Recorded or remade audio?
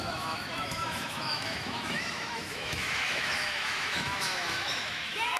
remade